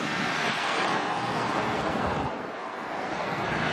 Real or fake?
fake